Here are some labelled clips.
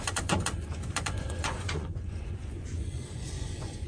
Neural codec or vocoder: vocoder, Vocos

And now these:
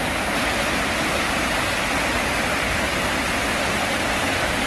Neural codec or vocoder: none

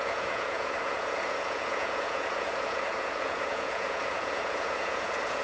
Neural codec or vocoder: vocoder, Vocos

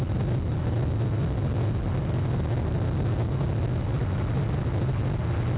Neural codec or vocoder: none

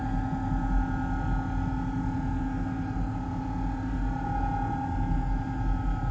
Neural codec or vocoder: none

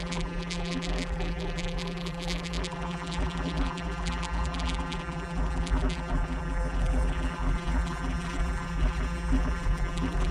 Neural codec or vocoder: vocoder, BigVGAN v2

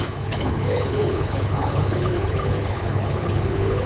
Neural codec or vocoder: codec, HILCodec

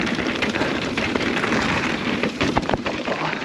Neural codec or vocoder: vocoder, BigVGAN v2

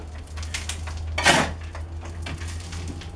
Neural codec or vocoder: none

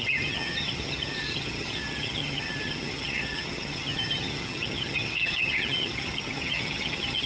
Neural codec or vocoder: vocoder, HiFi-GAN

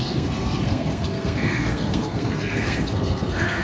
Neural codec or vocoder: codec, SNAC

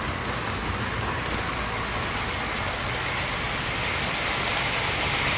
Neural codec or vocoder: none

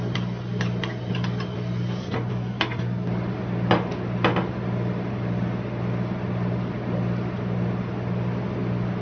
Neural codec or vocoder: none